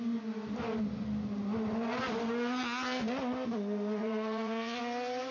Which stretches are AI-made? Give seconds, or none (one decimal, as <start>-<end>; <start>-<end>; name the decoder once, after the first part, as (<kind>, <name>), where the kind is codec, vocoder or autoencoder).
4.0-4.8 (vocoder, Vocos)